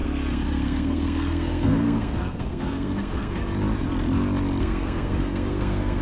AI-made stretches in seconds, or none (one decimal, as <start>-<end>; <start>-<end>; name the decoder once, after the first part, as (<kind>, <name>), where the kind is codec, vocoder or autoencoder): 0.0-3.4 (codec, SNAC); 4.6-6.0